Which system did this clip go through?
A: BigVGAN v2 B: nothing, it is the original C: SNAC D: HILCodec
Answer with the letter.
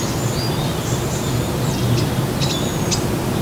B